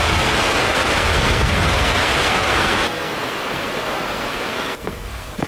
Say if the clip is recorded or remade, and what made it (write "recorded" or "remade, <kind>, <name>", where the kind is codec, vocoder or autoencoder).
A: remade, codec, SNAC